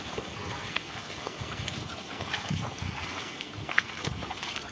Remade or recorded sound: remade